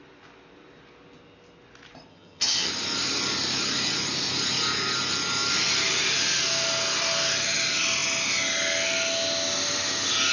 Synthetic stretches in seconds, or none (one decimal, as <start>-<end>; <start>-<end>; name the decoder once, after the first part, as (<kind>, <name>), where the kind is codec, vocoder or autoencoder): 2.1-2.7 (vocoder, HiFi-GAN)